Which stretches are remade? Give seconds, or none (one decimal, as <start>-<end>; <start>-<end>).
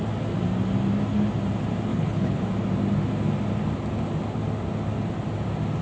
1.9-2.4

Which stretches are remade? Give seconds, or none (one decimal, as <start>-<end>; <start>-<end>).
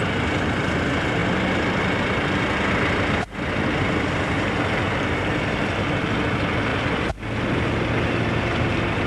none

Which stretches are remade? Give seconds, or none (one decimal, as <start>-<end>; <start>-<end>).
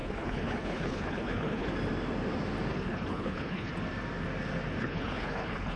0.0-1.7; 2.7-3.7; 4.8-5.8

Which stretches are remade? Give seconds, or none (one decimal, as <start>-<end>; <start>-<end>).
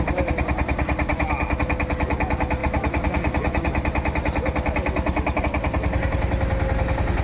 none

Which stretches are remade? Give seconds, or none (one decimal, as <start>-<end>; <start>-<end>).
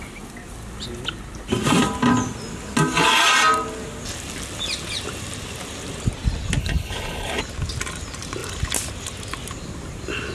6.6-7.4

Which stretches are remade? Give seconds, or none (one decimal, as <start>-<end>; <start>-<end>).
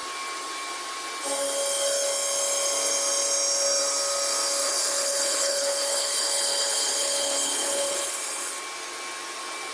4.6-8.5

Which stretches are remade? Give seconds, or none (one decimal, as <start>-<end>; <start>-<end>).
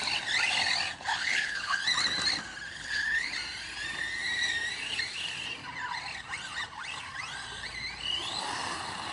1.1-1.8; 2.7-3.3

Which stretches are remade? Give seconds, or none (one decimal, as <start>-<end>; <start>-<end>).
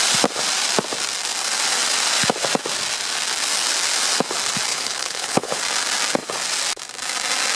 4.7-5.6